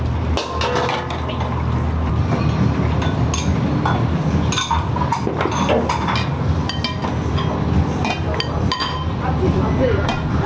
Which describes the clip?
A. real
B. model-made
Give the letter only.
A